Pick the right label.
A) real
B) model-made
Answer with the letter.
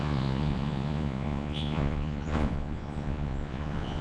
B